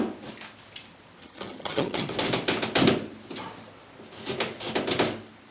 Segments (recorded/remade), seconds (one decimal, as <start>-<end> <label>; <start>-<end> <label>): 0.0-1.2 recorded; 1.2-2.1 remade; 2.1-5.5 recorded